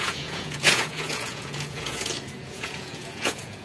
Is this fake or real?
fake